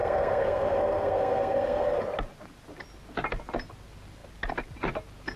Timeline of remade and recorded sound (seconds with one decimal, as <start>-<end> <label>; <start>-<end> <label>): 0.0-2.0 remade; 2.0-5.4 recorded